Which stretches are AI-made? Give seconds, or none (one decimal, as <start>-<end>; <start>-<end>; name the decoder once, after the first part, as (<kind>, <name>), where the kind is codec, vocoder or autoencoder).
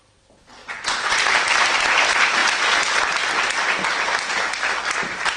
0.6-1.2 (vocoder, Vocos)